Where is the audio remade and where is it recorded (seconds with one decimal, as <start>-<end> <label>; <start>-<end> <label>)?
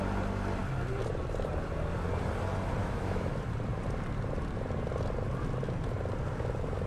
0.0-2.8 recorded; 2.8-3.4 remade; 3.4-6.9 recorded